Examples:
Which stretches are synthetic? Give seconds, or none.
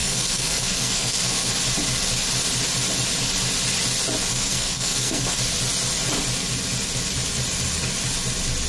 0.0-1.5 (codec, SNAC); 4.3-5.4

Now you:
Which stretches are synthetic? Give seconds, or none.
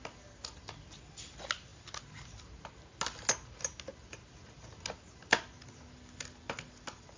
none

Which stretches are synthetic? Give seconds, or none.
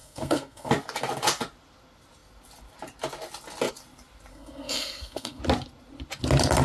0.0-0.7 (codec, SNAC); 4.3-5.4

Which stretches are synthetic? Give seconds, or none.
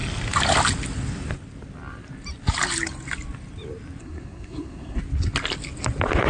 4.0-5.0 (codec, SNAC)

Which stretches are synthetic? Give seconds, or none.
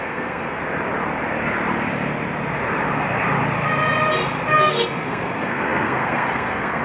0.0-0.6 (codec, SNAC); 4.5-6.8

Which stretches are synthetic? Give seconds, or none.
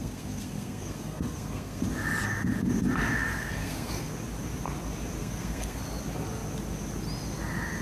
0.0-1.8 (codec, SNAC); 3.0-4.1; 5.2-5.8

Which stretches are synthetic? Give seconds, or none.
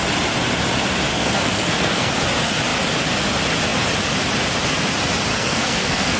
1.1-2.1 (codec, SNAC); 5.3-6.2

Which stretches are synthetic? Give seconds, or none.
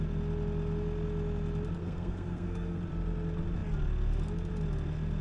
1.8-2.8 (codec, SNAC)